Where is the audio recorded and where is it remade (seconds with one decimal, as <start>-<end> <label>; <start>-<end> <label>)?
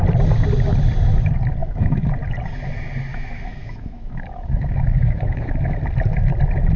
0.0-1.6 recorded; 1.6-2.1 remade; 2.1-3.1 recorded; 3.1-5.8 remade; 5.8-6.8 recorded